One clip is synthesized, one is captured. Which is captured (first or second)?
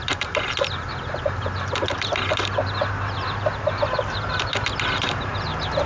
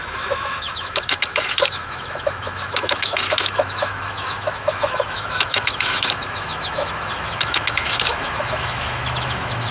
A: first